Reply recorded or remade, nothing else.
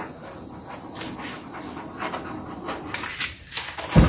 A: recorded